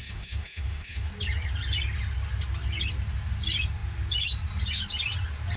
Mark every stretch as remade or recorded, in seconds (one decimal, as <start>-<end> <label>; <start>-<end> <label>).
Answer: 0.0-1.1 remade; 1.1-5.6 recorded